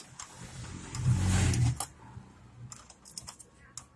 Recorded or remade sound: recorded